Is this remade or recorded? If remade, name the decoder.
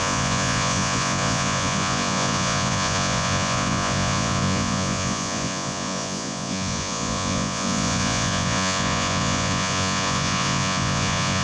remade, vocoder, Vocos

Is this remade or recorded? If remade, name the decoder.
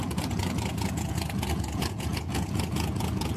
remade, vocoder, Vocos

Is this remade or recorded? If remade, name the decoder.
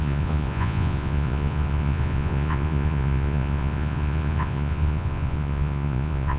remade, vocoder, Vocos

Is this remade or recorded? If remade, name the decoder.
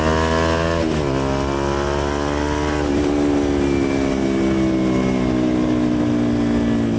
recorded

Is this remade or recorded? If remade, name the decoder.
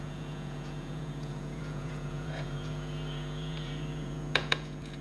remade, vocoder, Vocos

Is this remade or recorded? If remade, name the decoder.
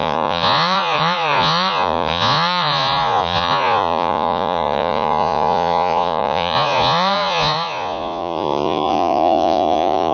remade, vocoder, Vocos